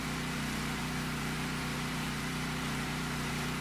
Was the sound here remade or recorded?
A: remade